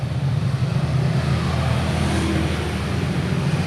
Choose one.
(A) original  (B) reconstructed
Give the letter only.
A